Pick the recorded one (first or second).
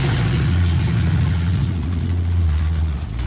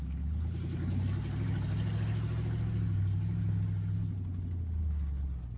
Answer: second